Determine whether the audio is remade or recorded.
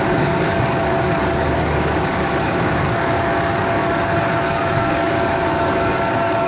remade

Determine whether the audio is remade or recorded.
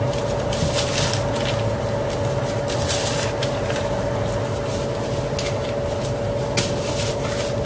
recorded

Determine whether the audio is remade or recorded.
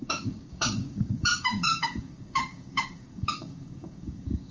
remade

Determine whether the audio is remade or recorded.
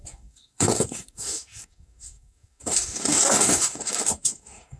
remade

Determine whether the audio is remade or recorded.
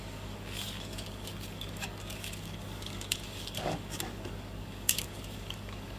remade